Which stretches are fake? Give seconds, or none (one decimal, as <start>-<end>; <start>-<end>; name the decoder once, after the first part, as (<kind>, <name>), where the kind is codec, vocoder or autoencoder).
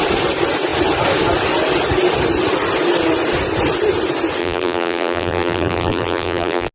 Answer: 4.4-6.7 (vocoder, BigVGAN v2)